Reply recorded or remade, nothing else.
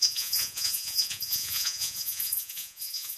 remade